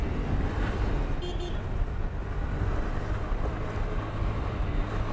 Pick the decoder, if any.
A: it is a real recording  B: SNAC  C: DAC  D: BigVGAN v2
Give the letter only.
A